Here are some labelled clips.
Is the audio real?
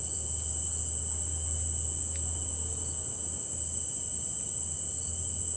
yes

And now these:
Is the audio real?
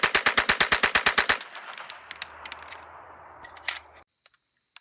yes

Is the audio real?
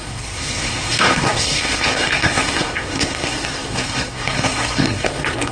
no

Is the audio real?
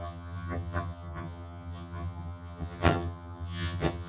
no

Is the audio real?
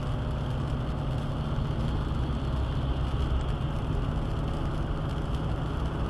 yes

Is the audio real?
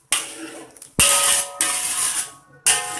yes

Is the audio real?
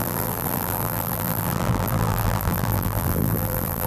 no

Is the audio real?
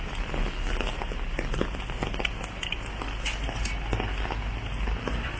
yes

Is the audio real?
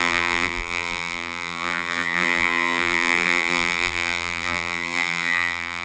no